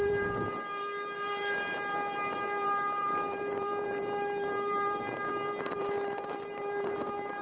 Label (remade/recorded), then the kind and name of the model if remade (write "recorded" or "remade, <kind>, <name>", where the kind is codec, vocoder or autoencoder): remade, vocoder, BigVGAN v2